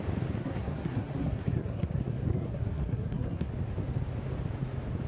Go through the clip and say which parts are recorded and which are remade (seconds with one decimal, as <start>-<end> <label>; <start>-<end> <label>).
0.0-0.4 recorded; 0.4-3.5 remade; 3.5-5.1 recorded